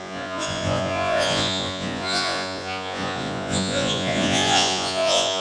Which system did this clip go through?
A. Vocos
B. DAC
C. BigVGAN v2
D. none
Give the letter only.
A